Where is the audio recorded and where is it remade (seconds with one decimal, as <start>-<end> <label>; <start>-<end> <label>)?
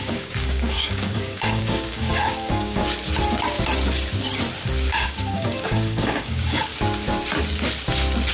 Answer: 0.0-2.8 remade; 2.8-4.9 recorded; 4.9-6.7 remade; 6.7-8.3 recorded